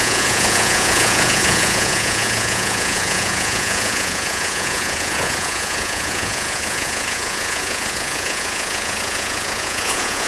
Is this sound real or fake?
fake